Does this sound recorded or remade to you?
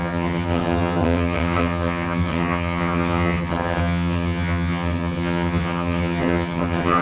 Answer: remade